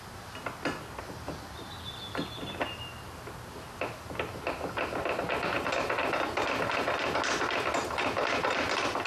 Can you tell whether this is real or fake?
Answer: real